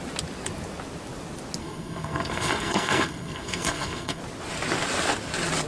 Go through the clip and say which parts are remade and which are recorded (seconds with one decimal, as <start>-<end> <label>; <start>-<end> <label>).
0.0-1.6 recorded; 1.6-4.2 remade; 4.2-5.7 recorded